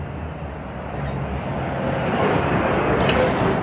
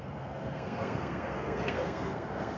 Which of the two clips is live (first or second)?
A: first